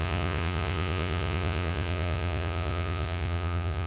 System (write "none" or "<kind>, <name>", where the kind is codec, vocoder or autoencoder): vocoder, Vocos